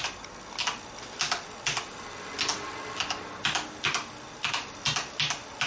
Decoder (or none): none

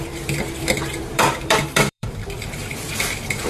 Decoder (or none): vocoder, BigVGAN v2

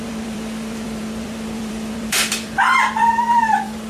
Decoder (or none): vocoder, BigVGAN v2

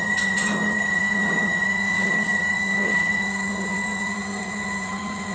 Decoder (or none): vocoder, HiFi-GAN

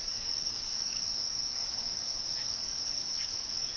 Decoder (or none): codec, DAC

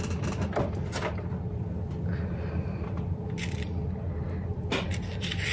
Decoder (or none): none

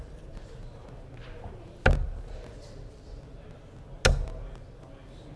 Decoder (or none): none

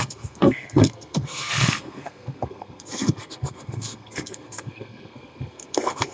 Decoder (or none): codec, SNAC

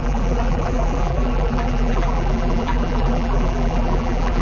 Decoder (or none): vocoder, BigVGAN v2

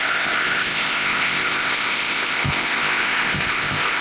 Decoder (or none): codec, ZipCodec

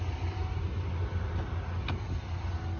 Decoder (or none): none